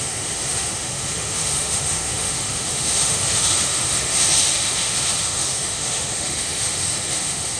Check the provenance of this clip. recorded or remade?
remade